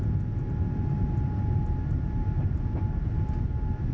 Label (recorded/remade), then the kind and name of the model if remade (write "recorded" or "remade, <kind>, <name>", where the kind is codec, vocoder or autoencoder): recorded